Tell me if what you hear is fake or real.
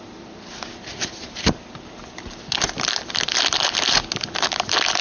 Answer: real